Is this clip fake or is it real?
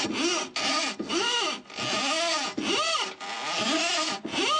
real